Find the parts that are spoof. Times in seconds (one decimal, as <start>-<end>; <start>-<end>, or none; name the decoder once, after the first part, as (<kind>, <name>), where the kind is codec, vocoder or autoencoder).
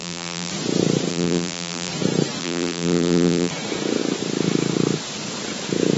0.0-0.5 (vocoder, BigVGAN v2); 1.1-1.9; 2.4-3.5